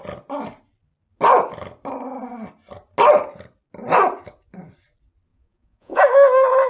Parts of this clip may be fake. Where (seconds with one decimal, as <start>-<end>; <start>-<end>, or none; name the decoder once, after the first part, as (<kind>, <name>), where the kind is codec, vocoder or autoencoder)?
5.3-6.0 (vocoder, Vocos)